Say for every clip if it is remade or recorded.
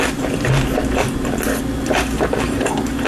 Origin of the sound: recorded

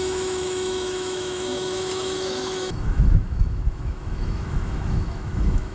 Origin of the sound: remade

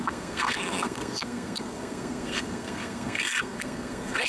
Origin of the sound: remade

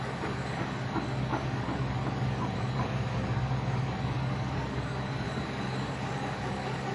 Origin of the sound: remade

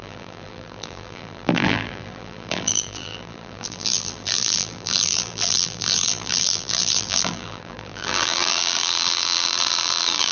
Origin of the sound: remade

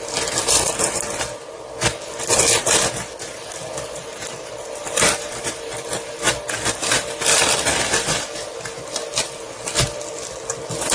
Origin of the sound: recorded